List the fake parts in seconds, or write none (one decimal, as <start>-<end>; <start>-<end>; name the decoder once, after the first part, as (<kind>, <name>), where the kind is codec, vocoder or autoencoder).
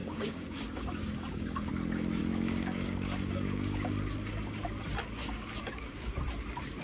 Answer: 0.0-1.7 (codec, DAC); 2.2-4.3; 5.2-6.1